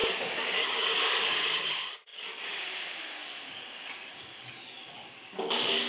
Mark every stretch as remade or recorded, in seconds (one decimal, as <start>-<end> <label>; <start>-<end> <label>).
0.0-5.9 remade